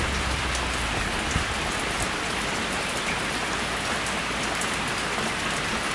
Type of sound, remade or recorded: recorded